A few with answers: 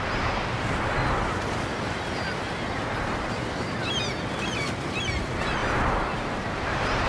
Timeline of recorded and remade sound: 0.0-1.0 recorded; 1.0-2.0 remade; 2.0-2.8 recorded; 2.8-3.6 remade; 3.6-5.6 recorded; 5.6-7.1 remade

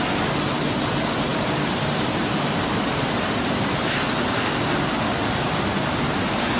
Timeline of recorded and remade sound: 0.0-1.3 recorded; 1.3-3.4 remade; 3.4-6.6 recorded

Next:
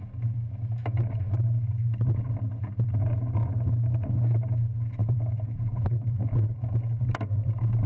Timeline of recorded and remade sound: 0.0-5.0 recorded; 5.0-6.3 remade; 6.3-7.9 recorded

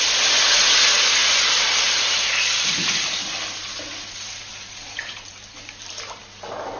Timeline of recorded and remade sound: 0.0-1.2 recorded; 1.2-3.2 remade; 3.2-4.5 recorded; 4.5-6.2 remade; 6.2-6.8 recorded